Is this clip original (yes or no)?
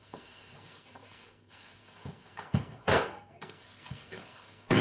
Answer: no